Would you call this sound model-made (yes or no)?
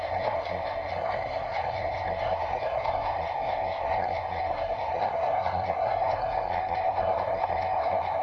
yes